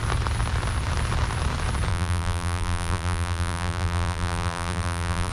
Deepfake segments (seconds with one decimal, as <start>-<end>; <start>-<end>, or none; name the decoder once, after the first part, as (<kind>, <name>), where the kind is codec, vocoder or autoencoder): 1.9-5.3 (vocoder, BigVGAN v2)